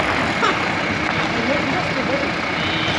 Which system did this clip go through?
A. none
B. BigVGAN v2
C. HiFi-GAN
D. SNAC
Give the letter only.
A